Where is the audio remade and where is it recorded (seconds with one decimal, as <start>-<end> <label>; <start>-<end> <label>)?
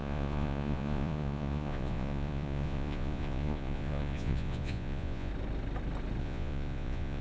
0.0-5.3 remade; 5.3-6.2 recorded; 6.2-7.2 remade